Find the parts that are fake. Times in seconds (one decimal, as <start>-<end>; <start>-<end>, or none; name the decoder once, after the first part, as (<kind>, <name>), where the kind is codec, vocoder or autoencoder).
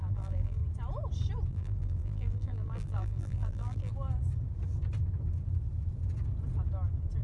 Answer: 0.0-0.6 (vocoder, BigVGAN v2); 1.5-3.9